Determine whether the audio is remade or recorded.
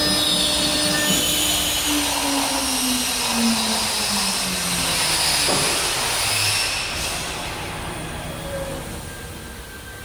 recorded